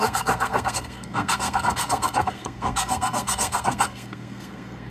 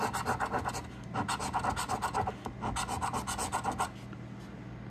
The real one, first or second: second